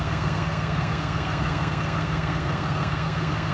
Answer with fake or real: fake